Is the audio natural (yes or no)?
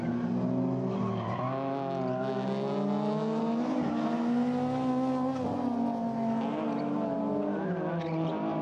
yes